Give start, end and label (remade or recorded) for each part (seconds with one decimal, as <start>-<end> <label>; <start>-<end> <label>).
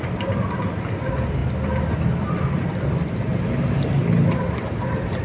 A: 0.0-5.2 recorded